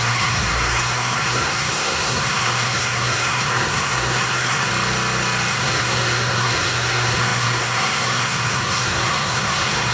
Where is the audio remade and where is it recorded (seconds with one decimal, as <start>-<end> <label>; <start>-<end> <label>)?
0.0-4.7 remade; 4.7-5.5 recorded; 5.5-9.9 remade